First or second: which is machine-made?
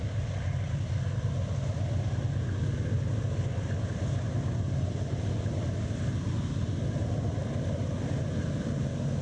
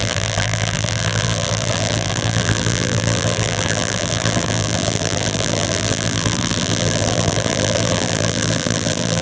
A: second